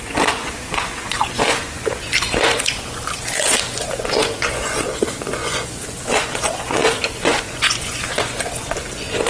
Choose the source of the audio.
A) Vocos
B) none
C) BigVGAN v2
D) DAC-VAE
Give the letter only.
A